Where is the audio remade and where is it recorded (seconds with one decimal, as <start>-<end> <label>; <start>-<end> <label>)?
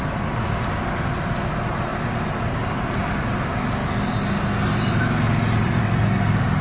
0.0-6.6 recorded